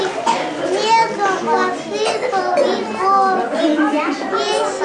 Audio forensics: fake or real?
real